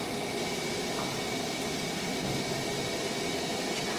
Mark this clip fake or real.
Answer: real